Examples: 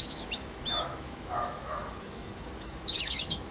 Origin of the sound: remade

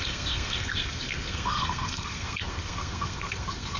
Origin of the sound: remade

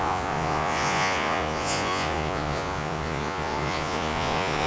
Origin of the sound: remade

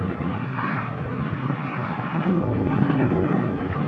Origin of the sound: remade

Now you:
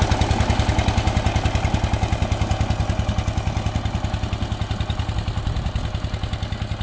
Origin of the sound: recorded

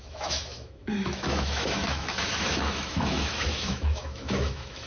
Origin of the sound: remade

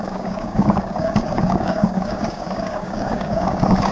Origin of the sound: remade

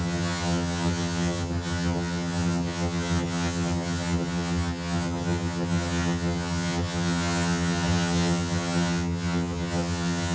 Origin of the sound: remade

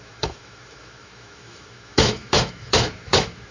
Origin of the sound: remade